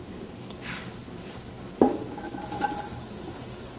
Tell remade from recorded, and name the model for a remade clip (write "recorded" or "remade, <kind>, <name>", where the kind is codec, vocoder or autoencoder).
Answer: remade, codec, DAC